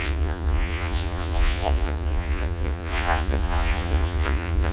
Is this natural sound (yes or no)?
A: no